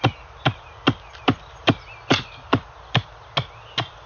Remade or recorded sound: recorded